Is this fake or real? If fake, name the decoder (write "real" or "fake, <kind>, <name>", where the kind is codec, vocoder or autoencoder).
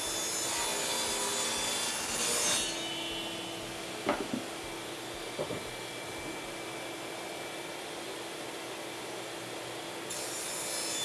real